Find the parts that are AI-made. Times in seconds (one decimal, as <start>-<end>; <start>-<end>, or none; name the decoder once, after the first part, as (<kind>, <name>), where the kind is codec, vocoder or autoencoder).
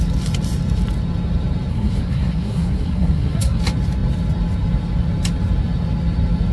1.7-3.6 (codec, SNAC)